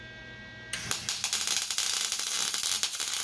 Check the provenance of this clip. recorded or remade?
recorded